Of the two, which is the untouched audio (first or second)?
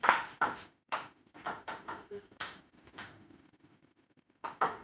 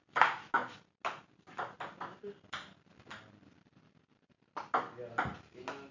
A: second